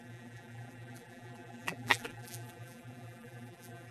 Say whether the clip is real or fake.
fake